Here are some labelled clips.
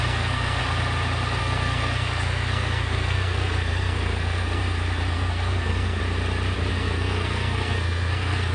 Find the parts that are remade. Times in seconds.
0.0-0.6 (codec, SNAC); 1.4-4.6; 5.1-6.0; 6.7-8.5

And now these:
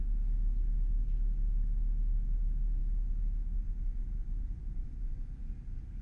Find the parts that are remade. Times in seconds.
none

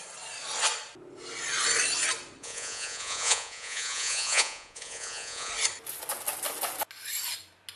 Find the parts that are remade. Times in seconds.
2.4-5.5 (vocoder, Vocos)

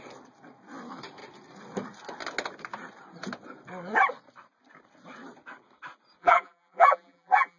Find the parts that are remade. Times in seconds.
6.2-7.6 (vocoder, BigVGAN v2)

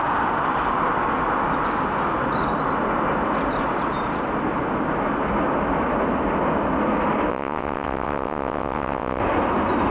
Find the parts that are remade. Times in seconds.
7.3-9.2 (vocoder, WaveNeXt)

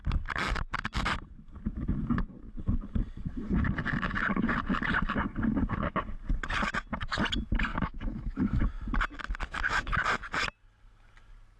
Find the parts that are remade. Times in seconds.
7.7-8.6 (autoencoder, DAC-VAE)

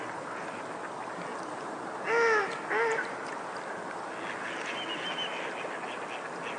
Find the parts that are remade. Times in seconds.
none

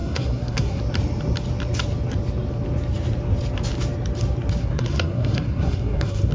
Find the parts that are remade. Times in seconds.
0.0-0.8 (codec, SNAC); 4.6-6.3